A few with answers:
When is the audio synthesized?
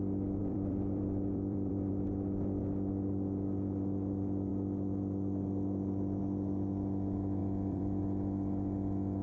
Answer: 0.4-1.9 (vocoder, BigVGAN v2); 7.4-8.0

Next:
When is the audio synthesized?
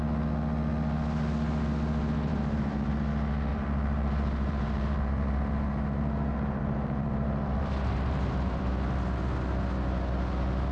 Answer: 2.3-2.9 (vocoder, BigVGAN v2); 3.5-8.7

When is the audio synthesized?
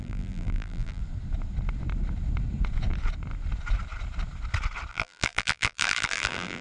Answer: 0.0-1.0 (vocoder, BigVGAN v2); 4.9-6.6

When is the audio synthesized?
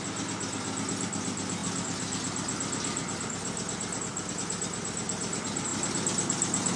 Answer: none